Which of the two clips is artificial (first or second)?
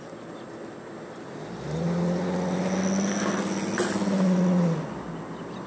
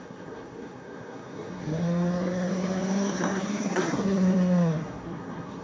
second